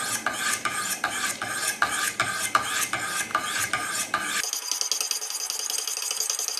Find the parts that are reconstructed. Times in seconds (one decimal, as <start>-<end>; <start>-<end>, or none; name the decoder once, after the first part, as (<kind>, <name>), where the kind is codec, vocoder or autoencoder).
none